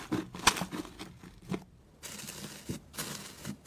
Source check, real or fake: real